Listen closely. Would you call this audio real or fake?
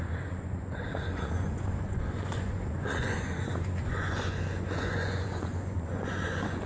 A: fake